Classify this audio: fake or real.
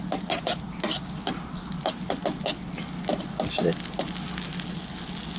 real